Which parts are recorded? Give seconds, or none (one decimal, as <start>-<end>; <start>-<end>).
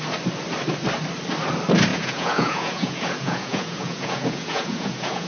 0.0-1.9